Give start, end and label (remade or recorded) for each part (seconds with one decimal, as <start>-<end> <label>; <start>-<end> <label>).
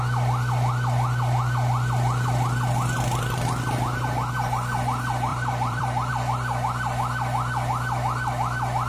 0.0-5.3 recorded; 5.3-6.1 remade; 6.1-8.9 recorded